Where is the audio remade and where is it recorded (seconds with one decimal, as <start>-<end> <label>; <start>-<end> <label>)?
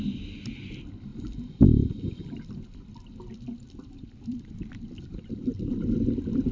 0.0-1.1 recorded; 1.1-4.5 remade; 4.5-5.5 recorded; 5.5-6.5 remade